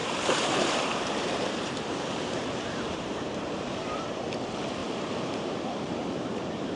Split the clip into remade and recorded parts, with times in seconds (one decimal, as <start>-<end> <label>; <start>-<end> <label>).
0.0-4.1 remade; 4.1-4.8 recorded; 4.8-6.8 remade